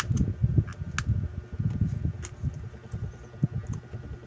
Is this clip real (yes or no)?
yes